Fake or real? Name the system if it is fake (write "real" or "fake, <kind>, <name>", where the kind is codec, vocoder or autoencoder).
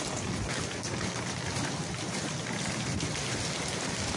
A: real